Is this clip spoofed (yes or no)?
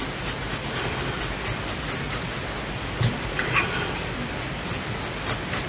no